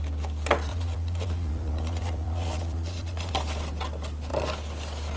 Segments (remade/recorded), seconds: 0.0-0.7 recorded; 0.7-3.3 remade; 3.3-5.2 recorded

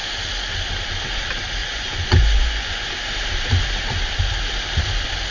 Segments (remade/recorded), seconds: 0.0-1.6 recorded; 1.6-2.9 remade; 2.9-5.3 recorded

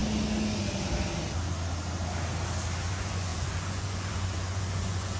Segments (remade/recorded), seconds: 0.0-2.9 recorded; 2.9-5.2 remade

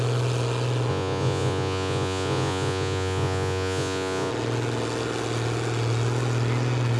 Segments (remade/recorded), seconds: 0.0-0.9 recorded; 0.9-4.3 remade; 4.3-7.0 recorded

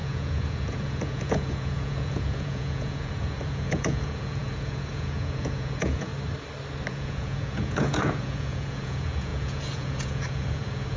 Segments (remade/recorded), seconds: 0.0-6.1 remade; 6.1-6.9 recorded; 6.9-11.0 remade